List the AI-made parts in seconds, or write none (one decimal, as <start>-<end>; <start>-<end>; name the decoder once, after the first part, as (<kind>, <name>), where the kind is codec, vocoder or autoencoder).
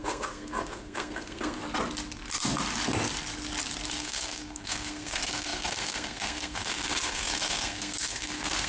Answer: 0.0-1.6 (codec, SNAC); 3.9-8.7